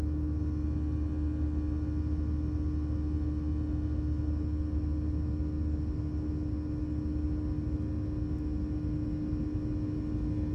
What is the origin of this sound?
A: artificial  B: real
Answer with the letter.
B